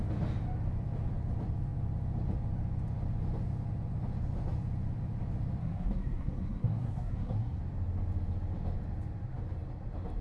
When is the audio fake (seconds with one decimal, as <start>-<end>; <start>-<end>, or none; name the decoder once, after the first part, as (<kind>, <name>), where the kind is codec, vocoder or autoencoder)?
5.6-7.6 (codec, SNAC)